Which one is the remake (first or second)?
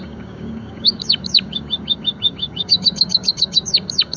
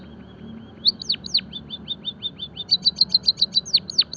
first